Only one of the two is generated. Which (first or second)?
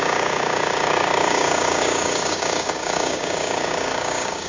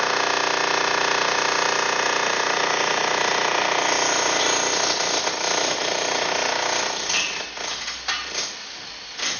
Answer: first